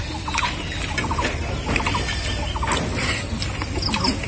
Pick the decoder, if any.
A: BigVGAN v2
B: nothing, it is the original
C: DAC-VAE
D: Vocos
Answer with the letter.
B